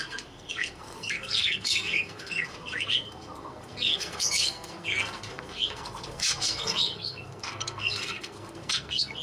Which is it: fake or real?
fake